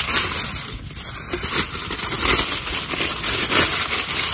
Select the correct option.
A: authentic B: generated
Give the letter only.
A